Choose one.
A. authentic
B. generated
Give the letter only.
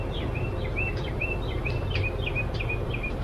A